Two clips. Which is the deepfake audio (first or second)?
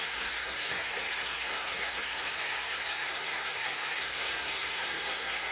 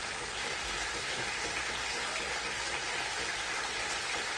first